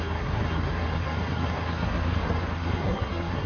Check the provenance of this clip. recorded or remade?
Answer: remade